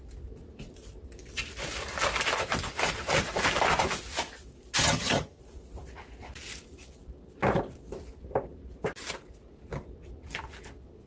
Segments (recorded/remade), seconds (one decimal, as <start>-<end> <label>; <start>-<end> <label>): 0.0-4.8 recorded; 4.8-5.4 remade; 5.4-11.1 recorded